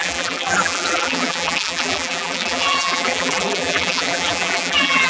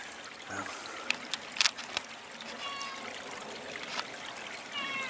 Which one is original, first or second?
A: second